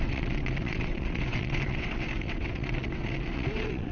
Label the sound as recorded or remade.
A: remade